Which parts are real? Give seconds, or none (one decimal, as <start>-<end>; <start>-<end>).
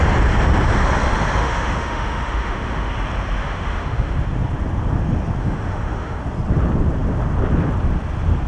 0.0-1.4; 2.9-3.4; 4.2-5.4; 6.2-8.5